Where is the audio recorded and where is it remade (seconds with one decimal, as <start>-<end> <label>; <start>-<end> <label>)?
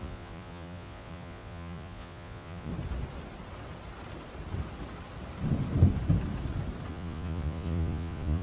0.0-2.7 remade; 2.7-6.9 recorded; 6.9-8.4 remade